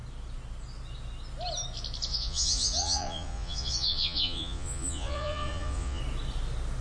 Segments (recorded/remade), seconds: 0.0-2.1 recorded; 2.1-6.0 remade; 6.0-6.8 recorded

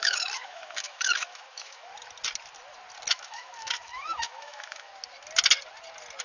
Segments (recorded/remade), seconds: 0.0-1.9 remade; 1.9-3.1 recorded; 3.1-4.9 remade; 4.9-6.2 recorded